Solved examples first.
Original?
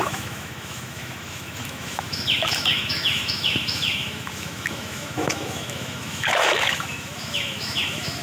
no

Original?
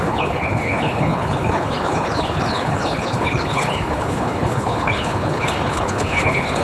no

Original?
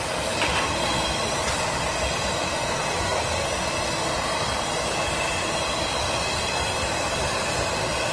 yes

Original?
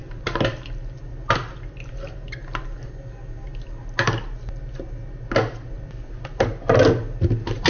yes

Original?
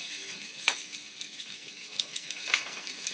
no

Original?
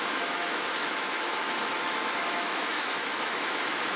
no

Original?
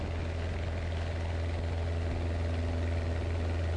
yes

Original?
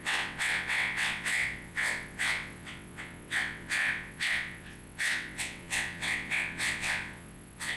no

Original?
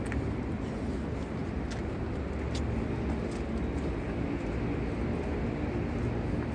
yes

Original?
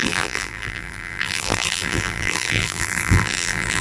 no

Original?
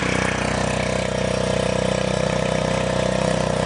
no